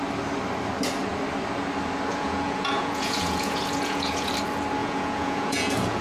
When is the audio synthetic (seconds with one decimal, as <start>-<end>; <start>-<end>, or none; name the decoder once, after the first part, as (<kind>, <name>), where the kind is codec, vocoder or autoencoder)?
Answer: 2.1-4.3 (vocoder, Vocos); 4.8-6.0

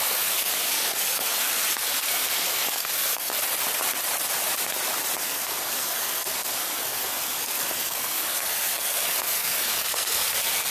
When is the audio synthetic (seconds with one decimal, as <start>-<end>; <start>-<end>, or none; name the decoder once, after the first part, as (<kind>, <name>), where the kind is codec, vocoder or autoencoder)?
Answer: 0.0-3.3 (codec, SNAC); 5.2-10.7

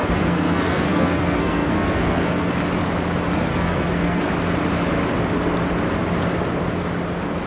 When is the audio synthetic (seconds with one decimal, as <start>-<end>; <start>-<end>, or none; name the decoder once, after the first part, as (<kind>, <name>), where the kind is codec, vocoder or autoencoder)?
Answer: 0.0-2.5 (codec, SNAC); 3.5-4.2

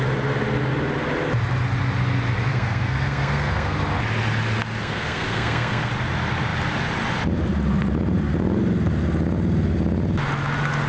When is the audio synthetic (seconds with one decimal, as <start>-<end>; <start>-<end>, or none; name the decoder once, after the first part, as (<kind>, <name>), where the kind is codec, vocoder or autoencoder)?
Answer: 2.5-3.8 (codec, SNAC); 4.8-5.9

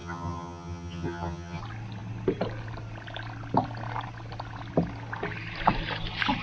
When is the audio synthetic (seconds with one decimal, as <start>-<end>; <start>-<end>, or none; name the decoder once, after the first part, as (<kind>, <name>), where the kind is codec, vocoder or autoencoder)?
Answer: 0.0-1.6 (vocoder, HiFi-GAN)

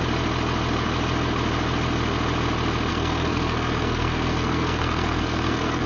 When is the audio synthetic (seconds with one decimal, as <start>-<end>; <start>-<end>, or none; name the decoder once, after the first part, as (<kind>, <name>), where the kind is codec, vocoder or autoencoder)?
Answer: 2.9-5.9 (codec, SNAC)